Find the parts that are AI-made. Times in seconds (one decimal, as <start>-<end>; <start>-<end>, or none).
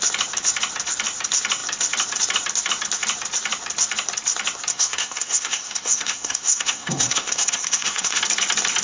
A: 4.7-8.2